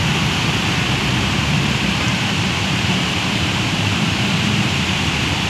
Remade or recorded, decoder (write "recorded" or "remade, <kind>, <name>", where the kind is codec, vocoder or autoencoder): remade, vocoder, BigVGAN v2